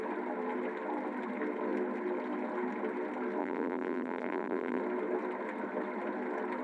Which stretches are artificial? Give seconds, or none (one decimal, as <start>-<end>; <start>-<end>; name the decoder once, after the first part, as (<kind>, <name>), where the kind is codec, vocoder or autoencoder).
3.4-4.8 (vocoder, BigVGAN v2)